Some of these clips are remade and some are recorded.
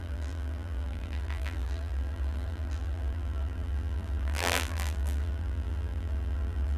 remade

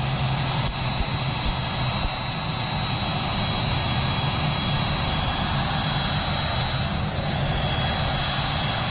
recorded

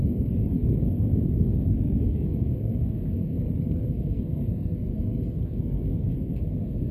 remade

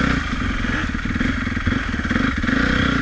recorded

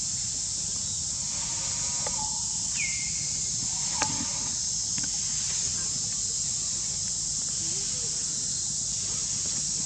recorded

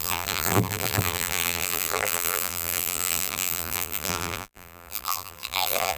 remade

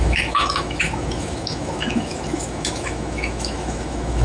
remade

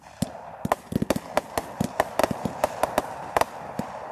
recorded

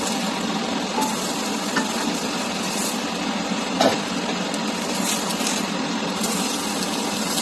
recorded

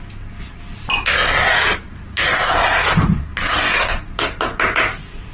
recorded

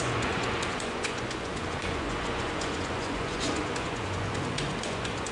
remade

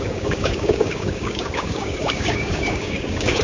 remade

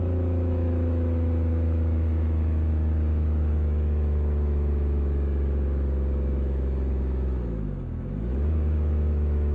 remade